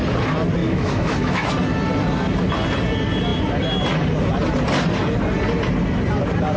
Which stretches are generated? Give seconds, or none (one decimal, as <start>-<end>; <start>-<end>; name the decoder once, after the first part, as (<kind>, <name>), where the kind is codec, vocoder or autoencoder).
0.6-1.5 (autoencoder, DAC-VAE)